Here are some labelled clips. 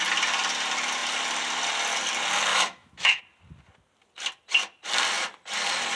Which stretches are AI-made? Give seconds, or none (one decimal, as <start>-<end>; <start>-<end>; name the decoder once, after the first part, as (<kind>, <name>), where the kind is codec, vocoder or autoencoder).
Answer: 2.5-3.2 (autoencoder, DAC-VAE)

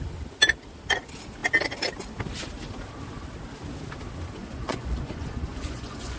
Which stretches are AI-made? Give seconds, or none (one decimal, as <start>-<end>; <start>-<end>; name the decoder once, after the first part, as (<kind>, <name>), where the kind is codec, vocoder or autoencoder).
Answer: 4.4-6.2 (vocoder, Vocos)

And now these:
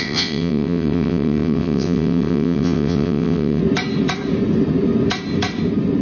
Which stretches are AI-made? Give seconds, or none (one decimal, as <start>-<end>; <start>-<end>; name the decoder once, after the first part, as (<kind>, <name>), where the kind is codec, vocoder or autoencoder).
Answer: 0.0-3.6 (vocoder, WaveNeXt)